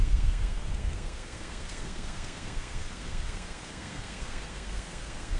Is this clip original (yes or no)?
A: no